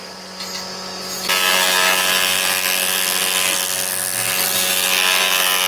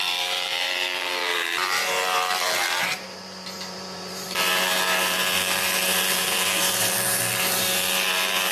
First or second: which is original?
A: first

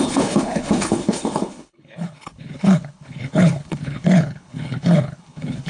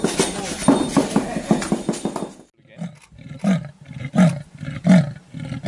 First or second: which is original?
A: second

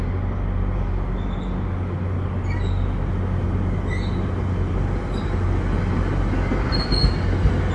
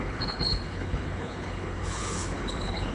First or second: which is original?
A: first